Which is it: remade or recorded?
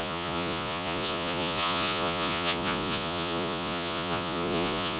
remade